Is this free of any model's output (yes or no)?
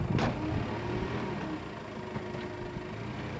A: yes